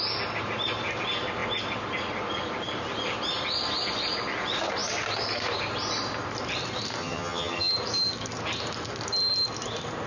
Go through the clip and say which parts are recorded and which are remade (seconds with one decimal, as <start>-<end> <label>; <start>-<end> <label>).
0.0-7.0 recorded; 7.0-7.7 remade; 7.7-10.1 recorded